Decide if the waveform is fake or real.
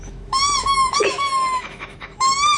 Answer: fake